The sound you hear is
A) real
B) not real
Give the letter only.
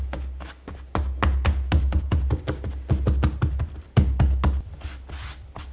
A